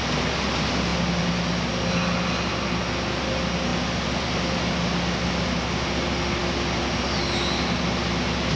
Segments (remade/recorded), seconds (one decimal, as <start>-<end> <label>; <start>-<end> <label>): 0.0-8.6 recorded